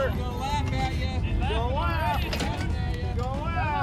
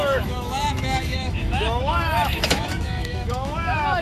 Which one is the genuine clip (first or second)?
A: first